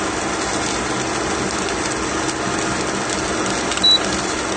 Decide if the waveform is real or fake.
real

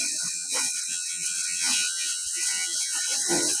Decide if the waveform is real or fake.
fake